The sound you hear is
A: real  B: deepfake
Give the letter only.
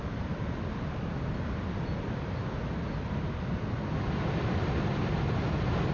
A